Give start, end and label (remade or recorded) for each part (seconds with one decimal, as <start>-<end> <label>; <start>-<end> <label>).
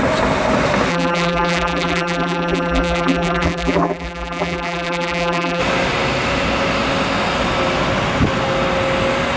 0.0-0.9 recorded; 0.9-5.6 remade; 5.6-9.4 recorded